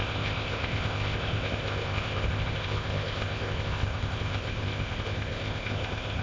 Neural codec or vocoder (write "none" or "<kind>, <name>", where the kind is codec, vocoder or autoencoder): codec, ZipCodec